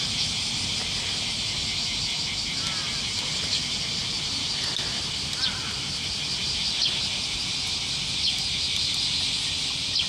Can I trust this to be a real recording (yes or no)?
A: yes